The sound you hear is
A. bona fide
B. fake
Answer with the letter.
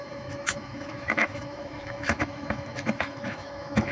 B